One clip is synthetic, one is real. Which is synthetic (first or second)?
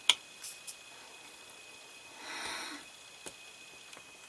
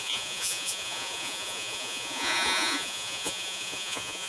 second